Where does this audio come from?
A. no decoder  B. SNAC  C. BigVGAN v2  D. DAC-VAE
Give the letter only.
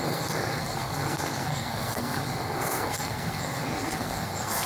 B